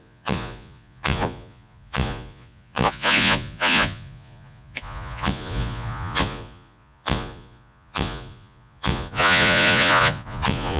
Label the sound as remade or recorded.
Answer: remade